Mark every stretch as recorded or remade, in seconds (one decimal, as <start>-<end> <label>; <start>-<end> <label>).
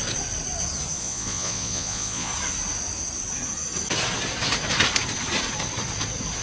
0.0-1.0 recorded; 1.0-2.3 remade; 2.3-6.4 recorded